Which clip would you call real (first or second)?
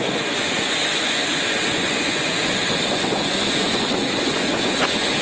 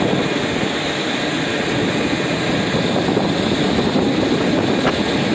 second